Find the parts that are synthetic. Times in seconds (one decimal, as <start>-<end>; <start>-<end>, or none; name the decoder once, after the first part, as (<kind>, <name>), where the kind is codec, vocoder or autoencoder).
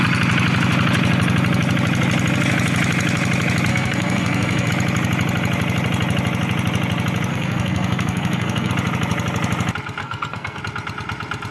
3.7-4.7 (codec, SNAC); 7.3-8.7; 10.0-10.6